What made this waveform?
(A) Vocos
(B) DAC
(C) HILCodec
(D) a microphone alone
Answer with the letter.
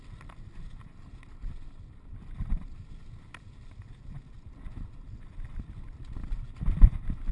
D